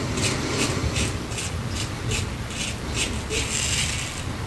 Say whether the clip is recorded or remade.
recorded